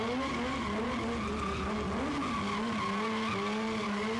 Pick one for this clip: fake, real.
real